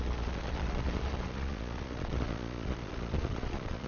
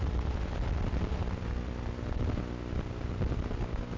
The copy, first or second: first